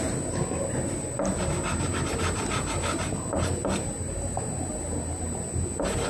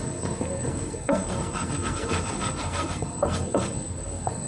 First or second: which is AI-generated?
second